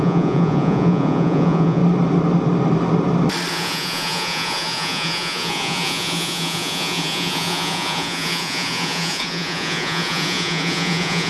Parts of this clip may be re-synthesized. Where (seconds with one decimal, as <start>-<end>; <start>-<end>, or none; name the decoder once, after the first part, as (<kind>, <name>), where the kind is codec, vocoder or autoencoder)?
0.0-1.8 (vocoder, Vocos); 3.5-11.3